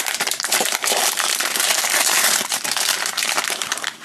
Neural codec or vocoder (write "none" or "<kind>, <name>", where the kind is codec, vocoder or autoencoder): vocoder, BigVGAN v2